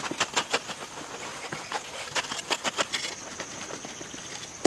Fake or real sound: real